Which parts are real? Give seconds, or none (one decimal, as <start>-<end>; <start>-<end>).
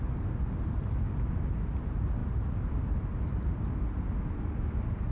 0.0-5.1